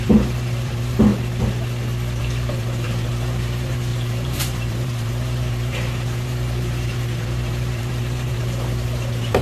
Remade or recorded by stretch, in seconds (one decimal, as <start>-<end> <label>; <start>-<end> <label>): 0.0-1.1 remade; 1.1-2.2 recorded; 2.2-9.4 remade